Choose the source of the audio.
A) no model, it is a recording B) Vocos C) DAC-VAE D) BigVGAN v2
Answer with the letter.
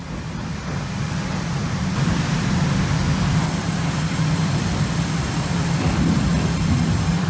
D